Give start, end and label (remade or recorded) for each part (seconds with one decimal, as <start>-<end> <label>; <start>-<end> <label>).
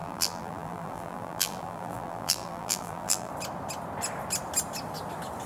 0.0-3.3 remade; 3.3-5.5 recorded